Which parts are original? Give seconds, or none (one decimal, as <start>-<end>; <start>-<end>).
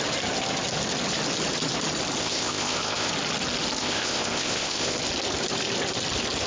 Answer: 0.0-2.2; 3.1-3.8; 5.0-6.5